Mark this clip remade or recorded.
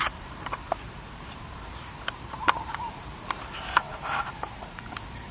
remade